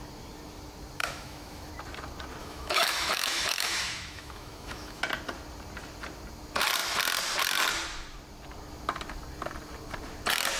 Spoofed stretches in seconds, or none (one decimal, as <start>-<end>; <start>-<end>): 1.0-1.7; 2.4-5.0